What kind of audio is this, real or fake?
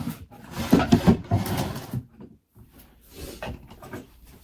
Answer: real